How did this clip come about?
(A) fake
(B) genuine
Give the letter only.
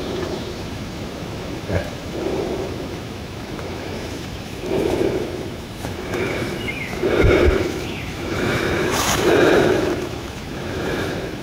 A